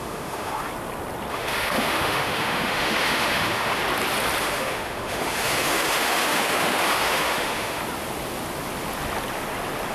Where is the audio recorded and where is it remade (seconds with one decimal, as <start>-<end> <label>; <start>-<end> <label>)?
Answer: 0.0-0.7 remade; 0.7-1.3 recorded; 1.3-3.8 remade; 3.8-4.4 recorded; 4.4-7.8 remade; 7.8-9.9 recorded